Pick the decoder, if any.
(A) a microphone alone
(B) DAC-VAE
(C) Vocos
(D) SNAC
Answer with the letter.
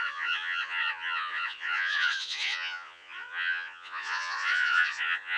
C